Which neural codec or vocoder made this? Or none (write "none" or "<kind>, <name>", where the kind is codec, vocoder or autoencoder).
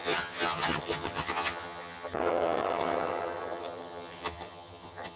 vocoder, HiFi-GAN